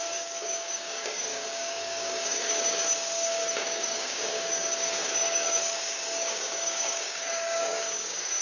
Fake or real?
fake